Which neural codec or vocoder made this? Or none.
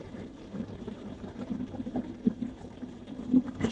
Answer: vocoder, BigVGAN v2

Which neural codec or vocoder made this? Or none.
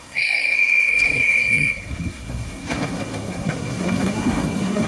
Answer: codec, SNAC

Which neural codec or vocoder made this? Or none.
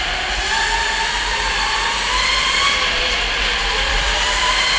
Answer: none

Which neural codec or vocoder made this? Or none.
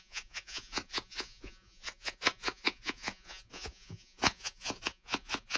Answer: vocoder, Vocos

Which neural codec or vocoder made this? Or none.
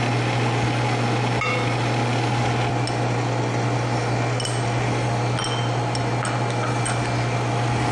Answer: none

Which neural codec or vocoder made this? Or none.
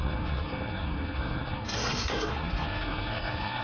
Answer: codec, SNAC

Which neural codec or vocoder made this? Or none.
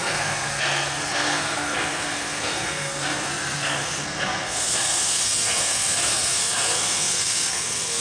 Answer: codec, SNAC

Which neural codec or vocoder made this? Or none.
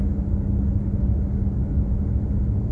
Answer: none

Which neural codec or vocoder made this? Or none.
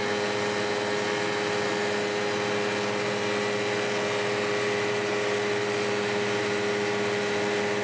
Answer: none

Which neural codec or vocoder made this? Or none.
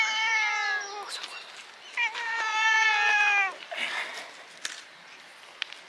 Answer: none